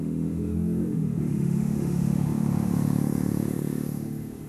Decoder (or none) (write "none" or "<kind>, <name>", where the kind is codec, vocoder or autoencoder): autoencoder, DAC-VAE